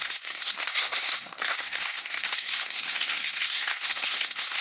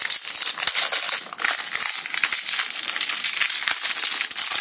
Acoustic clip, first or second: second